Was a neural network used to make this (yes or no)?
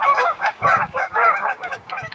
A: yes